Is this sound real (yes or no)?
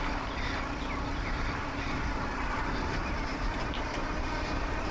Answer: no